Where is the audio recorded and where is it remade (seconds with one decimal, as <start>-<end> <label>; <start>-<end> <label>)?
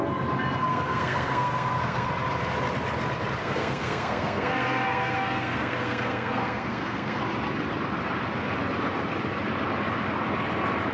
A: 0.0-0.6 recorded; 0.6-2.1 remade; 2.1-3.4 recorded; 3.4-7.2 remade; 7.2-10.9 recorded